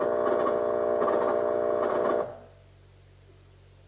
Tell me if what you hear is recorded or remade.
recorded